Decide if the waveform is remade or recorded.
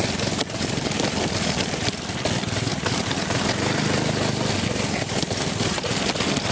remade